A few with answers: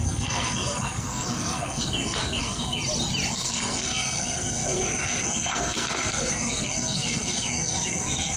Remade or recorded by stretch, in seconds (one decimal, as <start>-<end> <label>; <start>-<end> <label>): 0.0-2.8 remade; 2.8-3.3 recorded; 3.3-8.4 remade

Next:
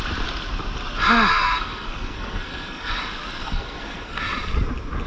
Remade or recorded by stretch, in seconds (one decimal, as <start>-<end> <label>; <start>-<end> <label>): 0.0-1.3 recorded; 1.3-3.0 remade; 3.0-3.4 recorded; 3.4-4.2 remade; 4.2-5.1 recorded

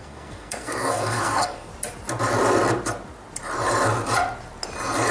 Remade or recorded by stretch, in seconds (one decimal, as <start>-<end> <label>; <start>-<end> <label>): 0.0-1.7 remade; 1.7-5.1 recorded

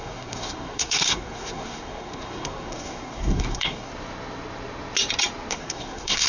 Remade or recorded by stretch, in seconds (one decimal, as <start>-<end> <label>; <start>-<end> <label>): 0.0-3.9 remade; 3.9-5.5 recorded; 5.5-6.3 remade

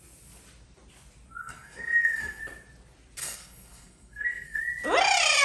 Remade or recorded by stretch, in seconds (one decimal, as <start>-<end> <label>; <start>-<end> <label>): 0.0-1.4 recorded; 1.4-2.4 remade; 2.4-3.2 recorded; 3.2-4.6 remade; 4.6-5.4 recorded

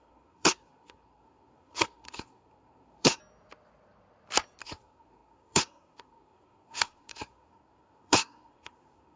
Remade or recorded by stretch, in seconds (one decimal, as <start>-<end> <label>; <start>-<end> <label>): 0.0-3.2 remade; 3.2-4.6 recorded; 4.6-9.2 remade

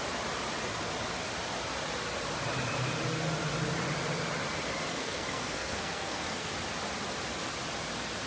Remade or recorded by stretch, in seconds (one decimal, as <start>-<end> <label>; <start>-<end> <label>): 0.0-4.9 recorded; 4.9-6.5 remade; 6.5-8.3 recorded

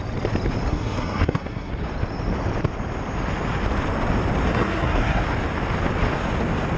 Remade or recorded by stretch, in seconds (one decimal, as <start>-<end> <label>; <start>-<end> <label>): 0.0-0.7 recorded; 0.7-1.7 remade; 1.7-4.5 recorded; 4.5-5.2 remade; 5.2-6.8 recorded